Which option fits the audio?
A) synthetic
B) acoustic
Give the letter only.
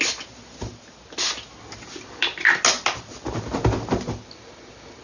B